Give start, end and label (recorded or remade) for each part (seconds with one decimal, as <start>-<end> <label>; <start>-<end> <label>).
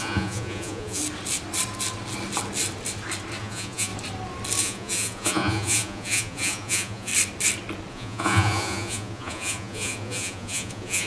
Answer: 0.0-1.0 remade; 1.0-3.4 recorded; 3.4-3.9 remade; 3.9-4.6 recorded; 4.6-7.1 remade; 7.1-7.9 recorded; 7.9-11.1 remade